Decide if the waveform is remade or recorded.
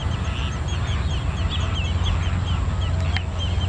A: recorded